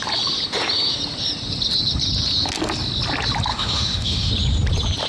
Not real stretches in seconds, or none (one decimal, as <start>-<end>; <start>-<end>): 3.5-4.3

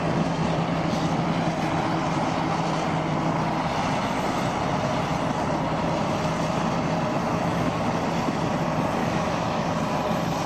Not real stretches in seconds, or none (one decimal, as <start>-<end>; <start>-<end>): 7.2-7.8; 9.0-9.7